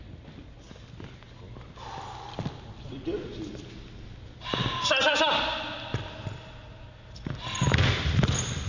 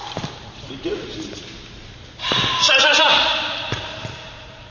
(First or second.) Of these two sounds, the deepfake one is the second